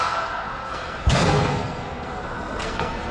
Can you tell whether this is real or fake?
fake